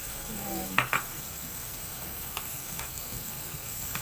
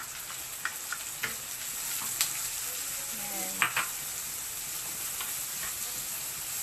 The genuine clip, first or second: second